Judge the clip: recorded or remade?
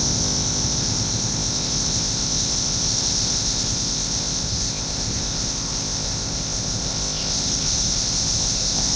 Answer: remade